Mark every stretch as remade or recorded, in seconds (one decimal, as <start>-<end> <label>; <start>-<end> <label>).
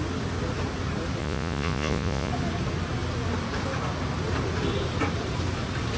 0.0-1.2 recorded; 1.2-2.3 remade; 2.3-6.0 recorded